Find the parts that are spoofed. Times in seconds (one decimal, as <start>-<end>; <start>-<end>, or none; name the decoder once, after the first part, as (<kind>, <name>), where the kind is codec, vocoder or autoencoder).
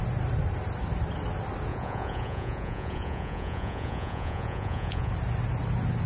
1.7-5.1 (vocoder, Vocos)